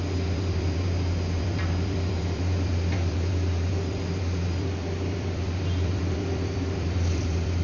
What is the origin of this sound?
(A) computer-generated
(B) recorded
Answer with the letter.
A